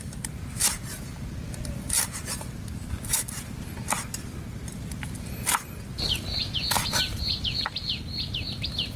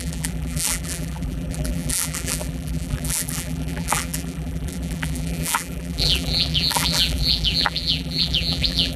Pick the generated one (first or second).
second